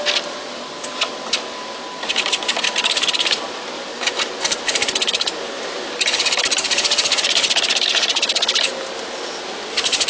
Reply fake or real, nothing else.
real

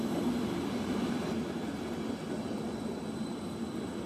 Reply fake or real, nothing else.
real